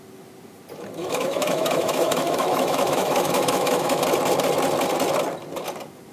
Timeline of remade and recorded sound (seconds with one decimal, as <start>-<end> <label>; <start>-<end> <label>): 0.0-1.0 recorded; 1.0-4.0 remade; 4.0-6.1 recorded